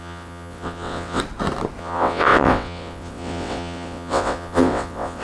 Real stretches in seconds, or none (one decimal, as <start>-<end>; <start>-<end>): 1.2-1.8